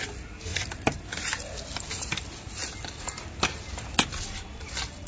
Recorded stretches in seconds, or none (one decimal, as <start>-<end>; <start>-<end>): 0.0-5.1